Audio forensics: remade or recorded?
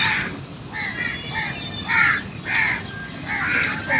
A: recorded